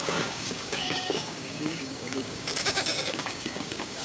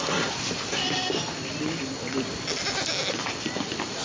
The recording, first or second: second